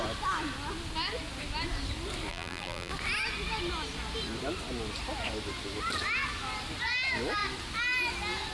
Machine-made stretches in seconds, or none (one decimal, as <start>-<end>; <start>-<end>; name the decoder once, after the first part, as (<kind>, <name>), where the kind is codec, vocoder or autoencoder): 2.3-2.9 (vocoder, BigVGAN v2)